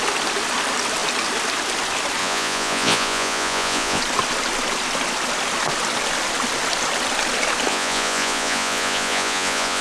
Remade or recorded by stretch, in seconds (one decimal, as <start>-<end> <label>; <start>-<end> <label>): 0.0-2.2 recorded; 2.2-4.0 remade; 4.0-7.7 recorded; 7.7-9.8 remade

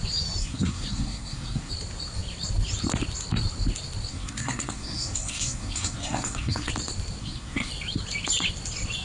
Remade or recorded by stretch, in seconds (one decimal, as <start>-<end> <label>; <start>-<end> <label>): 0.0-0.4 recorded; 0.4-1.7 remade; 1.7-4.1 recorded; 4.1-6.7 remade; 6.7-7.2 recorded; 7.2-7.7 remade; 7.7-9.0 recorded

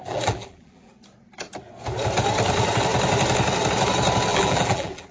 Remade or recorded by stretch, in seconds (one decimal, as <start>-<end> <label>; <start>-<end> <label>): 0.0-0.9 remade; 0.9-4.3 recorded; 4.3-5.1 remade

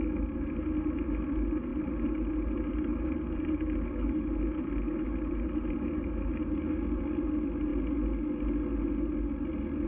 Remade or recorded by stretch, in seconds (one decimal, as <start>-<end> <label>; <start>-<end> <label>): 0.0-9.9 recorded

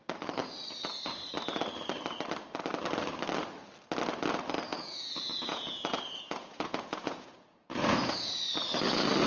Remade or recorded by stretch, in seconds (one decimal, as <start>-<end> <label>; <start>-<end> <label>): 0.0-4.7 recorded; 4.7-8.1 remade; 8.1-9.3 recorded